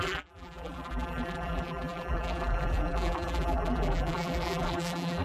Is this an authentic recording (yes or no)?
no